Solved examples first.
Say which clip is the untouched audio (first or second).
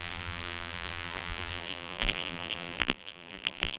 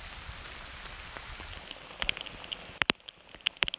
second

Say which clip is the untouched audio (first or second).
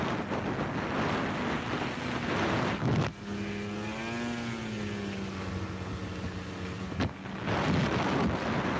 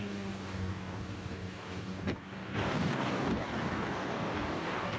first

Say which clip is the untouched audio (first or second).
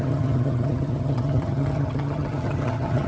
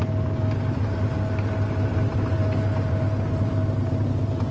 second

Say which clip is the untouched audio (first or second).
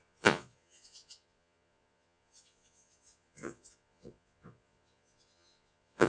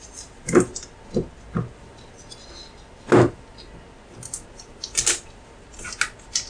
second